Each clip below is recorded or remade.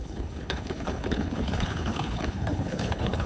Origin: remade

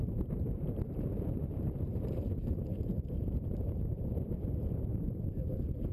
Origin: remade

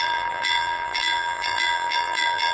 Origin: remade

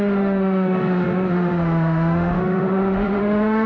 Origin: remade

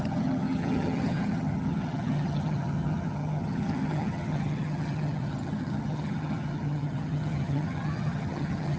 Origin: remade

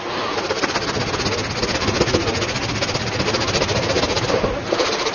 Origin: recorded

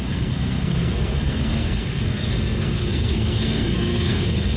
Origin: remade